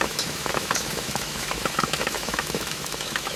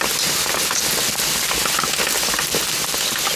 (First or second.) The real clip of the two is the second